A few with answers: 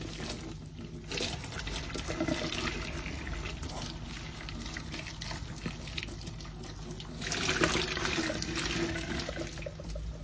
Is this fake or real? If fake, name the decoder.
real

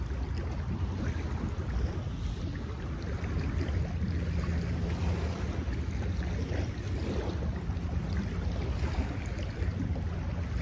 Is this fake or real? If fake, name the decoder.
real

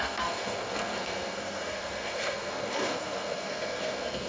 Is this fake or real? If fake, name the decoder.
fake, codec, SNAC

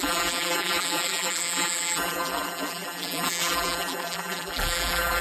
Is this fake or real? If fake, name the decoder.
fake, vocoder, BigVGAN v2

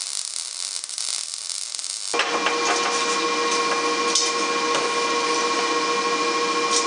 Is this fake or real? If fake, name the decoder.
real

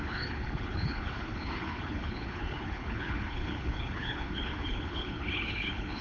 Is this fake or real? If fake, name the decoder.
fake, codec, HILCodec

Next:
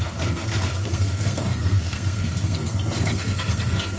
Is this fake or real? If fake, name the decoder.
fake, codec, SNAC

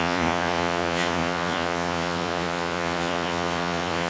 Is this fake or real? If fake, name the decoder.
fake, vocoder, Vocos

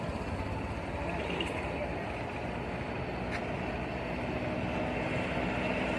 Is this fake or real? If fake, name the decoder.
real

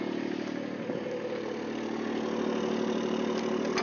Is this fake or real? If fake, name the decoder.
real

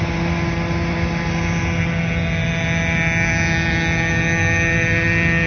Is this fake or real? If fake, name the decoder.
real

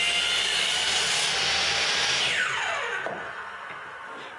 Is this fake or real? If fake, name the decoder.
real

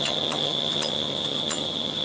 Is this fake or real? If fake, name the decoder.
fake, vocoder, HiFi-GAN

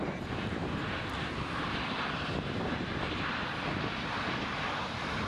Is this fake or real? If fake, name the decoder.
fake, vocoder, BigVGAN v2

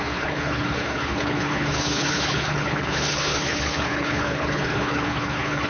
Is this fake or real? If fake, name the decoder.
fake, codec, HILCodec